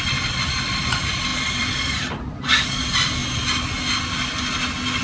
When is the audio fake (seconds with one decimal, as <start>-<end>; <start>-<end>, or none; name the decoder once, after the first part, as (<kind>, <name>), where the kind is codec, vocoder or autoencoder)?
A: 0.0-3.2 (vocoder, BigVGAN v2)